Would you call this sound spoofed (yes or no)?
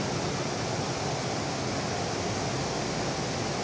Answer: no